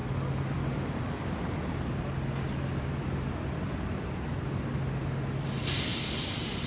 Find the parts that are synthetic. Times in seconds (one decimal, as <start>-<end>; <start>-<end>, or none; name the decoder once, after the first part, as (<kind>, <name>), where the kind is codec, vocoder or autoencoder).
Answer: 5.9-6.7 (vocoder, BigVGAN v2)